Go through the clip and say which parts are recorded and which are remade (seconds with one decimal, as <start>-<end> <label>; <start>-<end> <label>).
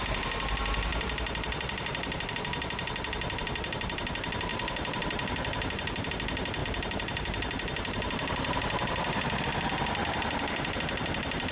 0.0-4.5 recorded; 4.5-6.1 remade; 6.1-6.6 recorded; 6.6-9.4 remade; 9.4-10.0 recorded; 10.0-10.8 remade; 10.8-11.5 recorded